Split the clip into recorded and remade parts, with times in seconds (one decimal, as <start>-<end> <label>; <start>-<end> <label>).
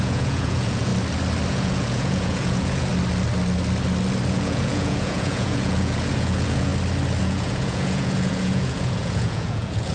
0.0-0.9 remade; 0.9-1.5 recorded; 1.5-2.9 remade; 2.9-4.3 recorded; 4.3-6.7 remade; 6.7-7.2 recorded; 7.2-9.9 remade